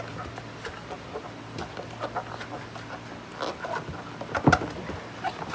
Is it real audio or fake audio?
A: real